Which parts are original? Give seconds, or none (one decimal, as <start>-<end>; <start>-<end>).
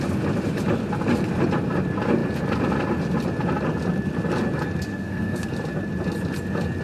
0.0-4.9; 5.5-6.8